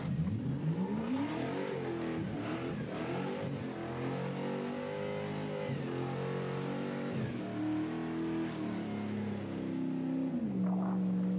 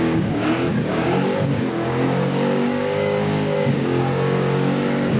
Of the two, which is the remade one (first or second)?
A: second